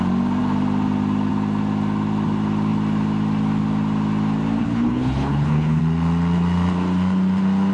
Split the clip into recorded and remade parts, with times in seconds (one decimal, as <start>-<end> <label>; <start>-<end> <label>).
0.0-4.6 recorded; 4.6-5.8 remade; 5.8-7.7 recorded